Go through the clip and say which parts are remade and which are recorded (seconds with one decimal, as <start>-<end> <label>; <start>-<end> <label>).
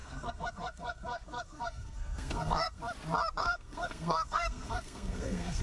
0.0-2.8 remade; 2.8-3.4 recorded; 3.4-5.6 remade